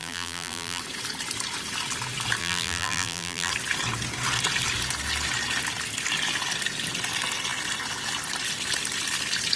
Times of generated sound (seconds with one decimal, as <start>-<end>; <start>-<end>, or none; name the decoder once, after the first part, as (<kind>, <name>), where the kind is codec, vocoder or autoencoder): 0.0-0.8 (vocoder, BigVGAN v2); 2.4-3.5